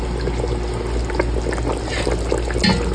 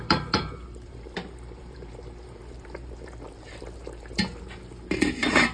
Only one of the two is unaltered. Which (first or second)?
first